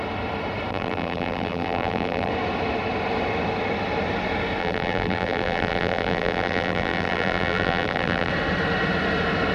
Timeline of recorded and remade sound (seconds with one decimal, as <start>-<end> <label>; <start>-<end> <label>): 0.0-0.7 recorded; 0.7-2.3 remade; 2.3-4.6 recorded; 4.6-8.3 remade; 8.3-9.5 recorded